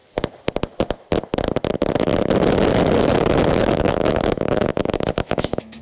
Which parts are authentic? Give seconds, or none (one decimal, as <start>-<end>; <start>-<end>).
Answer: 0.0-3.5